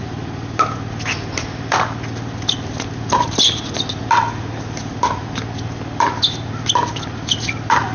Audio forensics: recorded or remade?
recorded